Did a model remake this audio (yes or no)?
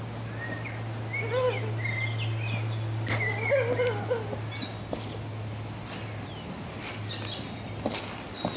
no